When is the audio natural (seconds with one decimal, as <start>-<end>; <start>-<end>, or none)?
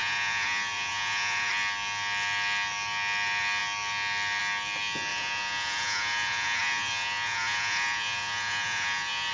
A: 1.5-5.1